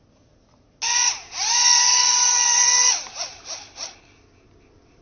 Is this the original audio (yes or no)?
yes